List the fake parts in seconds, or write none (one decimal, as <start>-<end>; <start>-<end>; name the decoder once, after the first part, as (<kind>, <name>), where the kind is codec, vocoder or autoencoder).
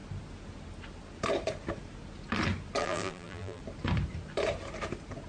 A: 2.8-3.6 (vocoder, BigVGAN v2)